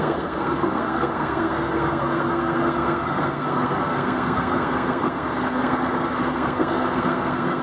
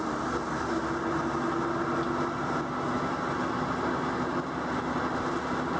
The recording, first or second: second